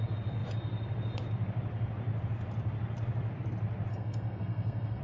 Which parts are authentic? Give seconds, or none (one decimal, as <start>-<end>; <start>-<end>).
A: 0.0-3.9

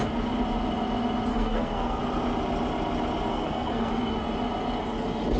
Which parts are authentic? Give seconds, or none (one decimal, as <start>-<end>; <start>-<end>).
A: 0.0-1.3; 2.0-3.3; 3.9-5.4

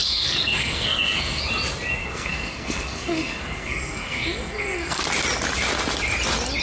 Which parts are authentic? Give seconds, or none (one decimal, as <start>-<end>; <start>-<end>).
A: 1.4-2.0; 5.0-6.6

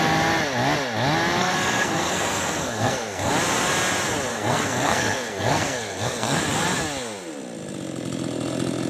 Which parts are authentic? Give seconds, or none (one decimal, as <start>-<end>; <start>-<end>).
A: 0.0-1.4; 3.3-4.3; 6.4-8.9

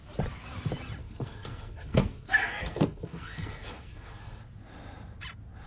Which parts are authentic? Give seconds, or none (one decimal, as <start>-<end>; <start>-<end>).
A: 0.0-1.0; 4.4-5.7

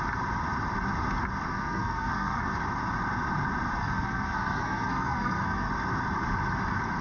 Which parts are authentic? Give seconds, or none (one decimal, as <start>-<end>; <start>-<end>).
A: 0.0-1.5; 2.4-3.8; 5.7-7.0

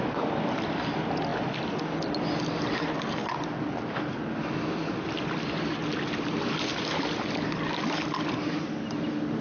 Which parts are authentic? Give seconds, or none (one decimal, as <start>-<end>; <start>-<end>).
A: 0.0-9.4

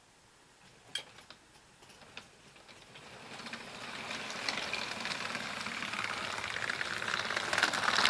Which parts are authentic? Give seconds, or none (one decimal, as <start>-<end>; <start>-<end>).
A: 0.0-8.1